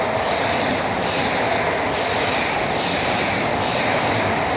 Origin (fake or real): real